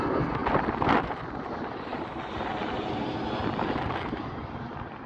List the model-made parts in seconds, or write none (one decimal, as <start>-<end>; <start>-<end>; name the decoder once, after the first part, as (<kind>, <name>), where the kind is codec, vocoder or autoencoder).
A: 0.4-1.2 (vocoder, BigVGAN v2)